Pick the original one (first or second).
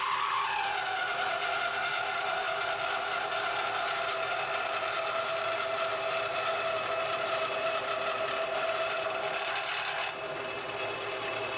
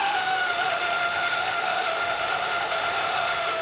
first